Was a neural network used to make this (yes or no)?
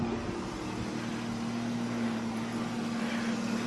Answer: no